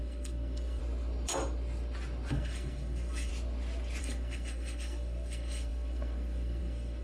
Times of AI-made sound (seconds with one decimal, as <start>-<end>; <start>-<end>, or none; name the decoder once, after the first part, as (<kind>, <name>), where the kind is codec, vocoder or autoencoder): 0.0-0.8 (codec, SNAC); 2.3-3.3; 4.0-7.0